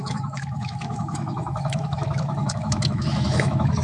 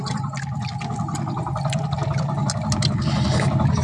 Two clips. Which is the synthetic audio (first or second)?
first